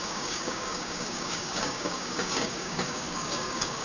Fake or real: fake